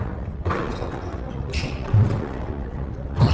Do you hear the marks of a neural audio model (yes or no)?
yes